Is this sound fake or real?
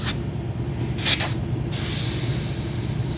real